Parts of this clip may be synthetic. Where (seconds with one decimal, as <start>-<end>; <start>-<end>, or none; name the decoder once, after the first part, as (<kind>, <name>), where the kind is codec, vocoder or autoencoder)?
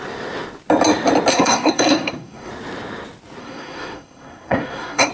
1.3-2.5 (codec, SNAC); 3.4-5.1